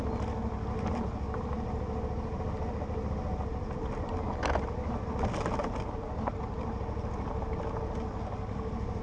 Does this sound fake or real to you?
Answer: real